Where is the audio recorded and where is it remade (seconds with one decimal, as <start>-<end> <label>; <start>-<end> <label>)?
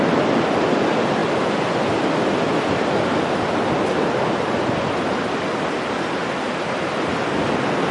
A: 0.0-7.9 recorded